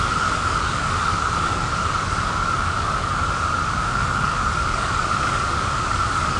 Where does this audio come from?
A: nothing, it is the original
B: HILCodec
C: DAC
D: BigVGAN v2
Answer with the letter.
C